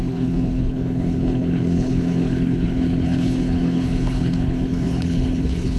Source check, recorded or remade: remade